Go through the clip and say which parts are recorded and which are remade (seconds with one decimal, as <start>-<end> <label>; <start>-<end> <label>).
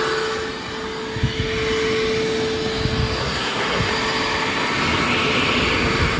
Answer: 0.0-3.2 recorded; 3.2-3.9 remade; 3.9-6.2 recorded